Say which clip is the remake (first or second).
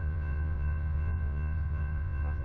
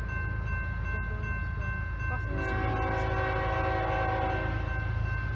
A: first